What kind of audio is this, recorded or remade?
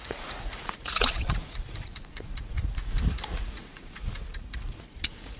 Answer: remade